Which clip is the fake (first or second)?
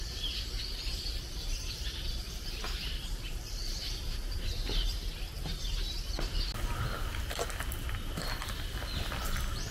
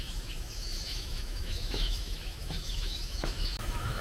second